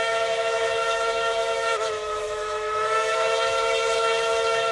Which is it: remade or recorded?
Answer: remade